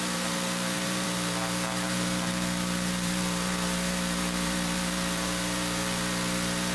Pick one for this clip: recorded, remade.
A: remade